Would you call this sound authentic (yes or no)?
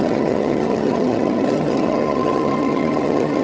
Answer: no